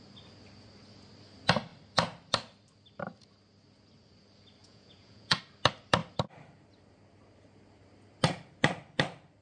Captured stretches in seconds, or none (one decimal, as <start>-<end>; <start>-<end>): 0.0-4.6; 5.4-9.4